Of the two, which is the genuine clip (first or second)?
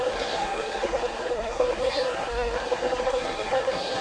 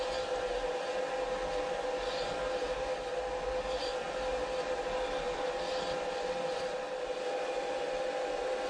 second